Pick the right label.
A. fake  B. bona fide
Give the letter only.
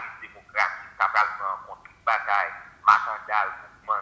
B